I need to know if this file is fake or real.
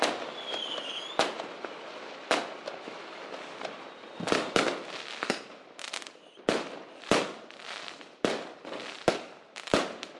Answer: real